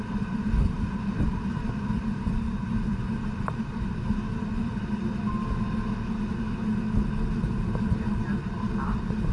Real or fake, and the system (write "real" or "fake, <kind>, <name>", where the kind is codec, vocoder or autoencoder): real